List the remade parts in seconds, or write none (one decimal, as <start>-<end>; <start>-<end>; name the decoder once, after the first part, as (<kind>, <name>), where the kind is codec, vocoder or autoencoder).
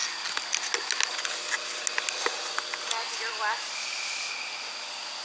none